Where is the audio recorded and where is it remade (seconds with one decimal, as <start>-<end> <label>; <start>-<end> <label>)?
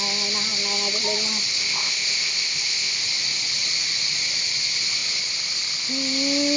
0.0-1.6 recorded; 1.6-3.0 remade; 3.0-6.6 recorded